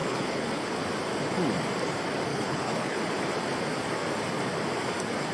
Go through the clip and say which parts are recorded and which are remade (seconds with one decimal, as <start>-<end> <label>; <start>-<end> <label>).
0.0-0.8 remade; 0.8-2.3 recorded; 2.3-3.0 remade; 3.0-5.3 recorded